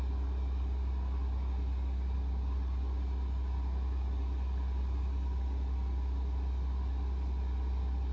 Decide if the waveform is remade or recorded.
recorded